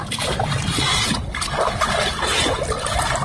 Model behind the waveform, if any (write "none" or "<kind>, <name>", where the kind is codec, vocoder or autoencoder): none